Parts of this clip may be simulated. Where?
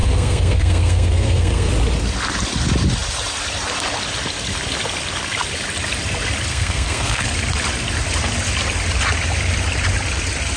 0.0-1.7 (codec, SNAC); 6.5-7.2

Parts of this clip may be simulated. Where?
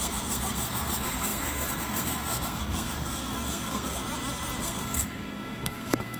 0.0-4.0 (codec, SNAC); 4.6-6.2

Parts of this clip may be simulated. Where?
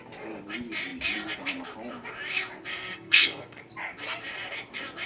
2.7-3.6 (codec, SNAC)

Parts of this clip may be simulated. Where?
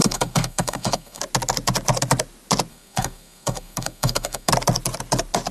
0.0-1.2 (codec, SNAC); 2.7-4.5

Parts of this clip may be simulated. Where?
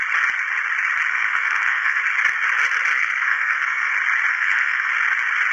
1.1-2.0 (codec, SNAC); 2.9-3.9; 4.3-4.9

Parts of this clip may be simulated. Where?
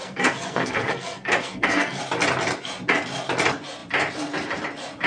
0.0-2.0 (codec, SNAC)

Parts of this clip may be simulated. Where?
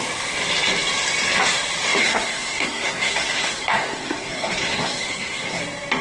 2.0-5.6 (codec, SNAC)